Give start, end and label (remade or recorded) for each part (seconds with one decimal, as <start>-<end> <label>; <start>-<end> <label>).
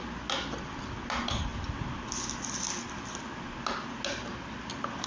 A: 0.0-5.1 recorded